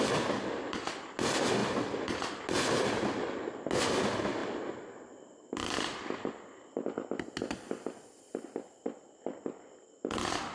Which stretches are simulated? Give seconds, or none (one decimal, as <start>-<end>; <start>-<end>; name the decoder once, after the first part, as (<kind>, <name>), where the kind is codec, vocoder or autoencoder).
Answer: none